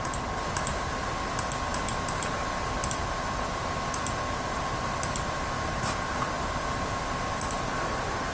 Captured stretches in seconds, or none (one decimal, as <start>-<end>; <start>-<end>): 0.0-8.3